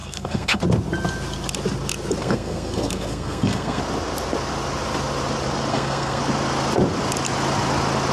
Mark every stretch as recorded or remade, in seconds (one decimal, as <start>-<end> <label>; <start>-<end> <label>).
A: 0.0-0.6 remade; 0.6-2.2 recorded; 2.2-3.8 remade; 3.8-5.7 recorded; 5.7-6.2 remade; 6.2-8.1 recorded